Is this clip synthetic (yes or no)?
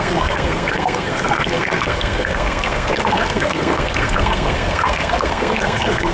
yes